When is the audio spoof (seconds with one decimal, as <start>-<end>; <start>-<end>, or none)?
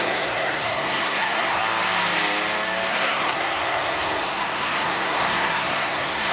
0.0-1.6; 2.9-6.3